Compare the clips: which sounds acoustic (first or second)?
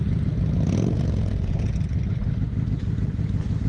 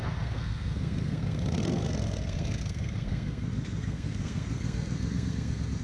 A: first